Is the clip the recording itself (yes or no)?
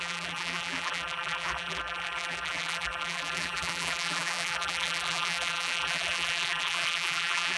no